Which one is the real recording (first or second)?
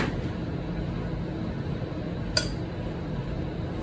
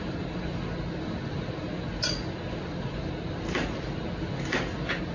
first